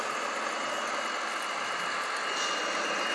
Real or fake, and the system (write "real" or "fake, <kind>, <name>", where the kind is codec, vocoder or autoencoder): real